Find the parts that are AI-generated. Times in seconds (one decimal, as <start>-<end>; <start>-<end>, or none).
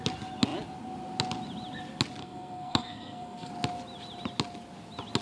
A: 2.2-3.5